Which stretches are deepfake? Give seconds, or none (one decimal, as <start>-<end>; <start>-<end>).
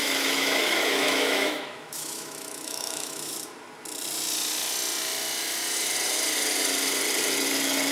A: 0.0-3.3